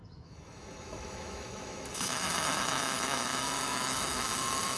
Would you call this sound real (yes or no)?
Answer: no